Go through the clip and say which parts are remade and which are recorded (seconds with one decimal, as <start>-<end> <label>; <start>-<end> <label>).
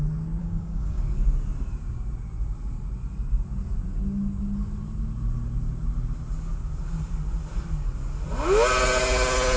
0.0-0.4 recorded; 0.4-1.0 remade; 1.0-9.6 recorded